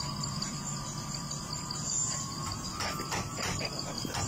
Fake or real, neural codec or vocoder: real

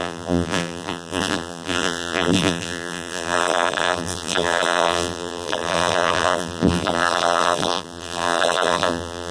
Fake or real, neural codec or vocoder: fake, vocoder, BigVGAN v2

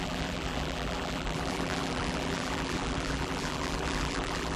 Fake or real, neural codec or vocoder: fake, vocoder, BigVGAN v2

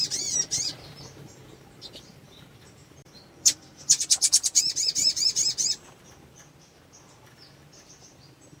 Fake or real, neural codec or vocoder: fake, vocoder, BigVGAN v2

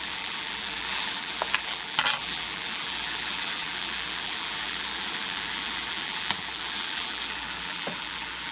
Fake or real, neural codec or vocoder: fake, vocoder, BigVGAN v2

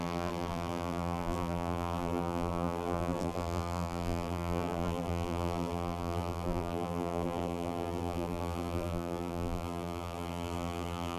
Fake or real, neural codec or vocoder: fake, vocoder, BigVGAN v2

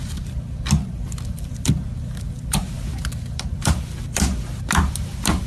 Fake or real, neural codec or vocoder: fake, vocoder, BigVGAN v2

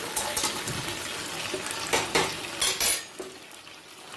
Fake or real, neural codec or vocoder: real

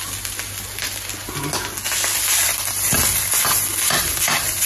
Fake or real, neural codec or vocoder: real